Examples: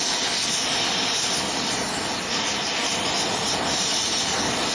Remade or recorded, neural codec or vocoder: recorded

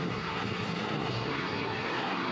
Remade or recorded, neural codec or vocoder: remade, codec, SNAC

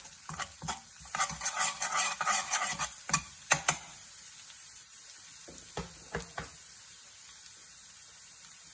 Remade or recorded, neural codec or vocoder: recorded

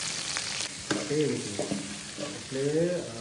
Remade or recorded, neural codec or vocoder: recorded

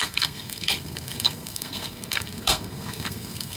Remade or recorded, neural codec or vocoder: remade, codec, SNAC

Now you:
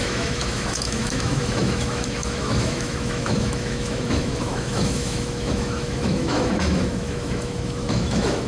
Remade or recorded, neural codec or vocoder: remade, autoencoder, DAC-VAE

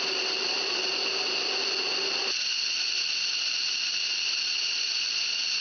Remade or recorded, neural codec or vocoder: recorded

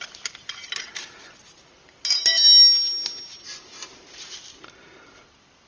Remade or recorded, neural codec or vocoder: recorded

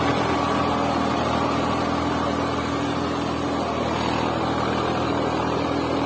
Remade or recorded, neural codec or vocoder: recorded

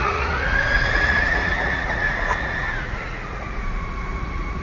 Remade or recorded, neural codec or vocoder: remade, vocoder, Vocos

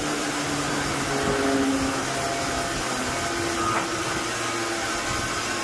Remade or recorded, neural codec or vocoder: recorded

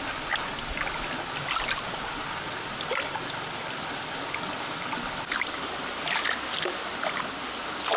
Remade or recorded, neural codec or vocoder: recorded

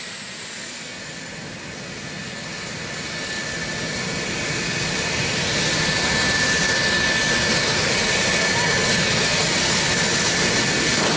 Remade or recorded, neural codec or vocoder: recorded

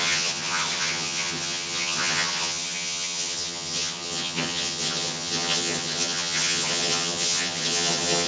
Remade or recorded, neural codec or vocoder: remade, vocoder, HiFi-GAN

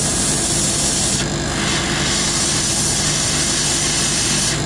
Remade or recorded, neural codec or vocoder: recorded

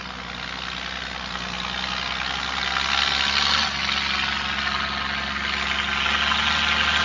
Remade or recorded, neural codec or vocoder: recorded